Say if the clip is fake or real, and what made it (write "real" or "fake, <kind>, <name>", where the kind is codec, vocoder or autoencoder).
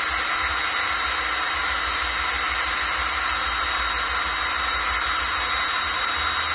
real